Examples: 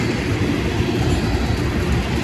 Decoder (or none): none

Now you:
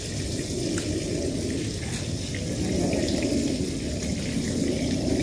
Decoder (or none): none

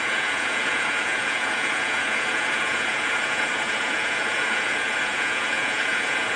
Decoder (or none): vocoder, Vocos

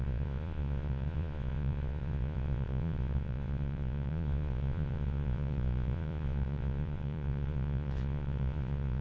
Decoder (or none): vocoder, Vocos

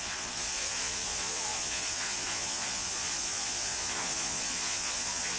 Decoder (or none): vocoder, Vocos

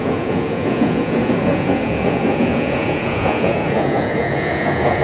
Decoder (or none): vocoder, Vocos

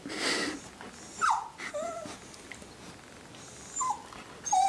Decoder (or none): none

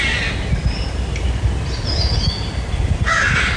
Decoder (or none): none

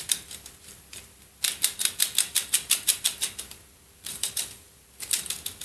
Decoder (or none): none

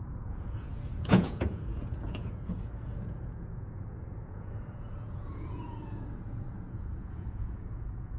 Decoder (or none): vocoder, Vocos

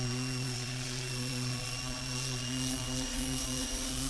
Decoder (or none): vocoder, Vocos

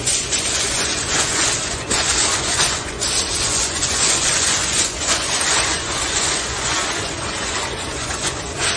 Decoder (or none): vocoder, Vocos